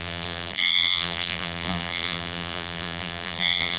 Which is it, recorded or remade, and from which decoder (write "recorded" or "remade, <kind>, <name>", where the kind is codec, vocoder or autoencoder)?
remade, vocoder, BigVGAN v2